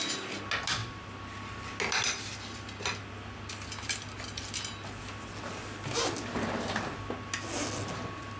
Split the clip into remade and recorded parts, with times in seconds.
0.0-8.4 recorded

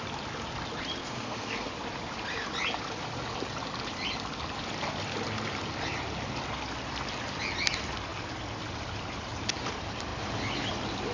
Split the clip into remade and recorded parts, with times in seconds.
0.0-1.0 recorded; 1.0-1.7 remade; 1.7-11.1 recorded

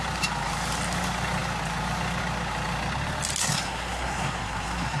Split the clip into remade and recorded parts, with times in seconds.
0.0-3.4 recorded; 3.4-5.0 remade

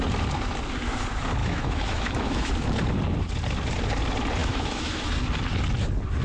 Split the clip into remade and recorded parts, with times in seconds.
0.0-1.4 recorded; 1.4-2.5 remade; 2.5-4.4 recorded; 4.4-5.0 remade; 5.0-6.2 recorded